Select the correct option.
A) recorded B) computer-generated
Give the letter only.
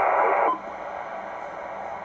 A